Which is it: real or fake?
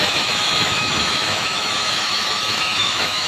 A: fake